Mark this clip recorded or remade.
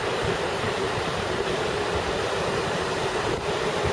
remade